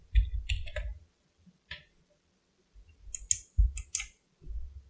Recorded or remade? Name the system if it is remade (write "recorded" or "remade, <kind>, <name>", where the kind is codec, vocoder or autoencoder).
recorded